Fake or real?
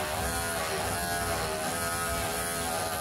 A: real